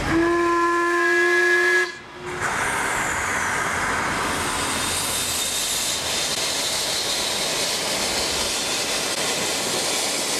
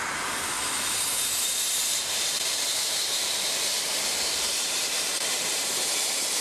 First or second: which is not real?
second